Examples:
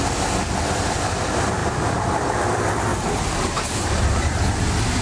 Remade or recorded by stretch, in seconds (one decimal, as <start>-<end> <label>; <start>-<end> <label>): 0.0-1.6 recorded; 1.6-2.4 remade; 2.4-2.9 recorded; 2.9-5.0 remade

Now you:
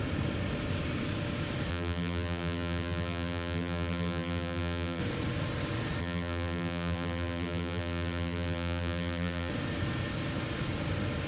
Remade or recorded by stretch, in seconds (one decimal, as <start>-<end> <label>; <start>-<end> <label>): 0.0-1.7 recorded; 1.7-5.0 remade; 5.0-6.0 recorded; 6.0-9.5 remade; 9.5-11.3 recorded

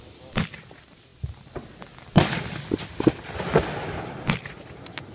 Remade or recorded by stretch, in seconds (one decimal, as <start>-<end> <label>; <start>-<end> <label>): 0.0-5.1 recorded

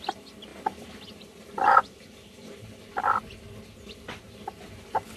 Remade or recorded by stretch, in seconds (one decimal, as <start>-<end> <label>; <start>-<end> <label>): 0.0-0.5 recorded; 0.5-2.0 remade; 2.0-5.2 recorded

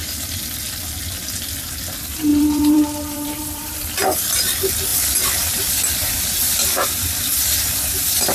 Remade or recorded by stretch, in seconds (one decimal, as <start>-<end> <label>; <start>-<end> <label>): 0.0-2.3 recorded; 2.3-4.2 remade; 4.2-4.9 recorded; 4.9-5.7 remade; 5.7-8.3 recorded